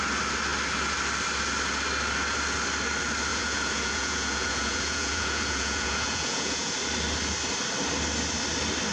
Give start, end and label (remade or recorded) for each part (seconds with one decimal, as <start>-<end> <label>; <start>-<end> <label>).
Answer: 0.0-3.3 recorded; 3.3-6.7 remade; 6.7-8.9 recorded